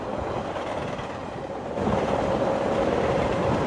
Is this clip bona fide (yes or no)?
no